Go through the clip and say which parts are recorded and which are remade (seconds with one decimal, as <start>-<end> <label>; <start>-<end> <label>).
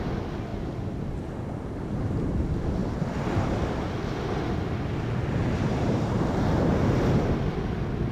0.0-5.7 recorded; 5.7-7.3 remade; 7.3-8.1 recorded